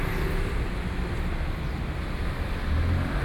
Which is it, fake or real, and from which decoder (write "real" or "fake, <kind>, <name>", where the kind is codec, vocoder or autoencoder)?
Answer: real